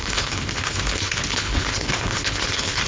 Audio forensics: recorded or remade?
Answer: remade